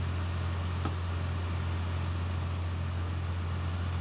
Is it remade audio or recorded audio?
recorded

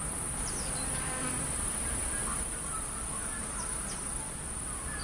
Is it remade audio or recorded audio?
recorded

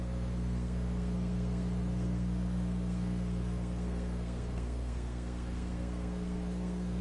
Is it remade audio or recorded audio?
remade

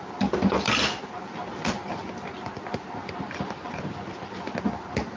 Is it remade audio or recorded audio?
recorded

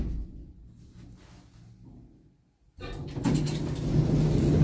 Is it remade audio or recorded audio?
recorded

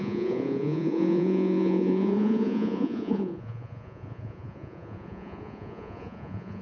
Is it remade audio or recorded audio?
remade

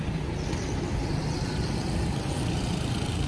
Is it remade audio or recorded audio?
recorded